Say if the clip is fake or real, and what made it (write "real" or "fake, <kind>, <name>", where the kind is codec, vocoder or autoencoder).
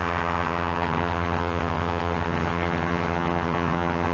fake, vocoder, HiFi-GAN